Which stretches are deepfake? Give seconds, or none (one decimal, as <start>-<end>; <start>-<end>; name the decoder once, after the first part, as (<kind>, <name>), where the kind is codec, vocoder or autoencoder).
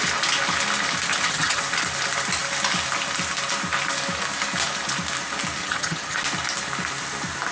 1.1-1.6 (vocoder, HiFi-GAN); 5.6-6.2